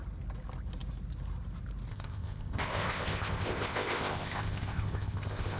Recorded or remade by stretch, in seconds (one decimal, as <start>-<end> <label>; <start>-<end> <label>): 0.0-1.9 recorded; 1.9-5.6 remade